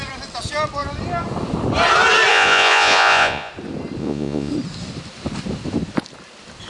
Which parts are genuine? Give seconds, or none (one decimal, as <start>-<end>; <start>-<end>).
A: 0.0-2.3; 3.5-4.0; 4.5-6.7